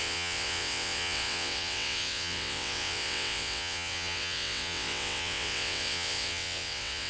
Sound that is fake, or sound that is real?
fake